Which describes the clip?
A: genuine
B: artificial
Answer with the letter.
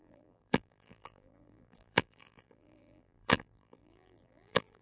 B